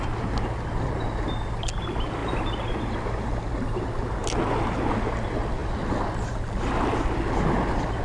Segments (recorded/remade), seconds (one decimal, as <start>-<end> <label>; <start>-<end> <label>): 0.0-8.0 recorded